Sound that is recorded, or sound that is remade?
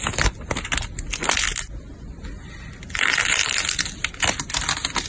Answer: recorded